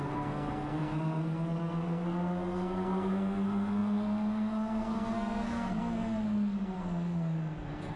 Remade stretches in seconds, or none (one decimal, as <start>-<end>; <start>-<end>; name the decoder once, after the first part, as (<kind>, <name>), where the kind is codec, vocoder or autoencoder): 0.0-8.0 (codec, SNAC)